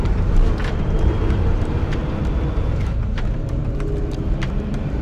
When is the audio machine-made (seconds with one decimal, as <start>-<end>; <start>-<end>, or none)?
0.0-2.0; 2.7-5.0